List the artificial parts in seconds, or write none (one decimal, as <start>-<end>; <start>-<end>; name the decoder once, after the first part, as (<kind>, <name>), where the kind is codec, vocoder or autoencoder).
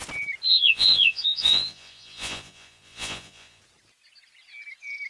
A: 0.5-3.6 (vocoder, Vocos)